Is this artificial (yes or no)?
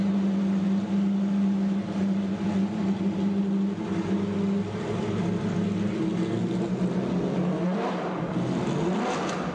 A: no